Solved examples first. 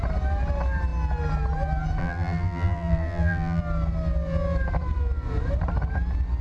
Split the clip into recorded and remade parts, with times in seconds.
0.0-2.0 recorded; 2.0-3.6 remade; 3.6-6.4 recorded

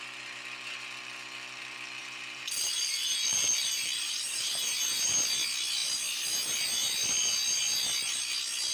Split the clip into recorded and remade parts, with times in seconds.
0.0-2.0 recorded; 2.0-4.8 remade; 4.8-8.7 recorded

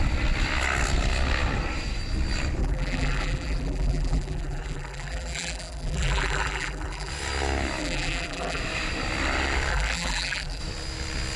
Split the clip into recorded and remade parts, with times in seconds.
0.0-2.6 recorded; 2.6-7.1 remade; 7.1-7.8 recorded; 7.8-8.6 remade; 8.6-9.7 recorded; 9.7-10.6 remade; 10.6-11.4 recorded

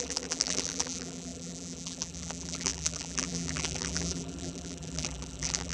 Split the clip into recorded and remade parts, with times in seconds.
0.0-5.7 remade

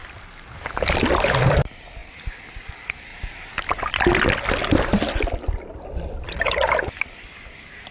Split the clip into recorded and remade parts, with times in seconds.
0.0-2.0 remade; 2.0-2.7 recorded; 2.7-3.1 remade; 3.1-6.2 recorded; 6.2-7.9 remade

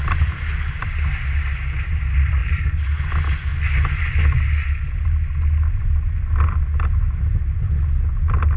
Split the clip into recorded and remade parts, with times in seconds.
0.0-2.4 recorded; 2.4-3.0 remade; 3.0-8.6 recorded